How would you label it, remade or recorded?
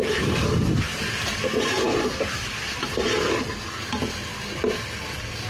recorded